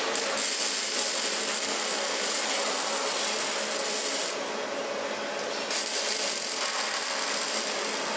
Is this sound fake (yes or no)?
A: no